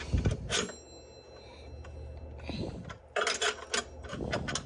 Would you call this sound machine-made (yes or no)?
no